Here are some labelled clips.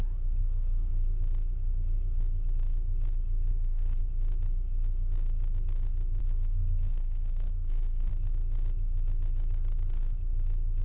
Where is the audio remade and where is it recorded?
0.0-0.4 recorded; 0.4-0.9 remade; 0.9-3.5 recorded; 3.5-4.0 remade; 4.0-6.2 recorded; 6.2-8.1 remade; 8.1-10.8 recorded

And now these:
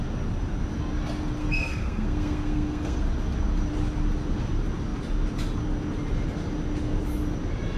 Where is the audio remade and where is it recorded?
0.0-1.4 recorded; 1.4-3.0 remade; 3.0-7.8 recorded